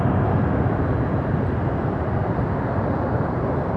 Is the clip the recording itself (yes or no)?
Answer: yes